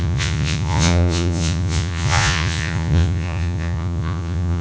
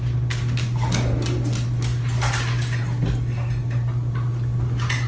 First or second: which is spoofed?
first